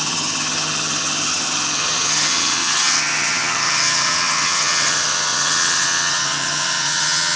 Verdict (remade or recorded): remade